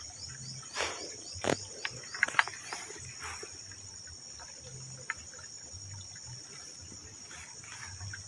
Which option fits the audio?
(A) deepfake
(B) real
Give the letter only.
B